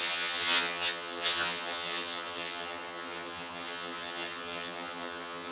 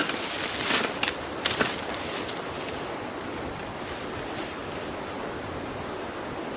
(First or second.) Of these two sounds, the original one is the second